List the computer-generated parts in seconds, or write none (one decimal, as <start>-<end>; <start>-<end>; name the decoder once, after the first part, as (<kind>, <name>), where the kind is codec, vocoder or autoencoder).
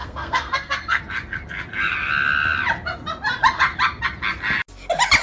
0.0-1.0 (codec, SNAC)